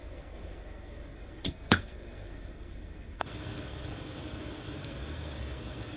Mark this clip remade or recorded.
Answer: remade